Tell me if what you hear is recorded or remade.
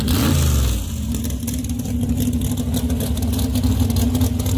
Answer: recorded